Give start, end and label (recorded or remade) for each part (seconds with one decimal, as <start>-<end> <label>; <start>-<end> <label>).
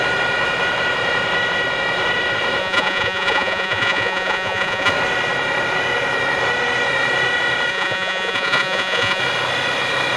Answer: 0.0-2.6 recorded; 2.6-4.9 remade; 4.9-7.7 recorded; 7.7-9.2 remade; 9.2-10.2 recorded